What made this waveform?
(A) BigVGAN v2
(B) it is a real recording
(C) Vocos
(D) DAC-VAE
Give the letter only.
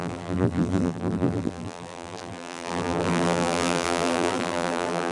A